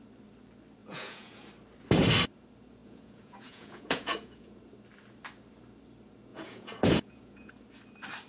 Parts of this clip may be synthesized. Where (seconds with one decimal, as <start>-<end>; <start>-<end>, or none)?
0.8-1.5; 2.8-4.6; 6.3-7.5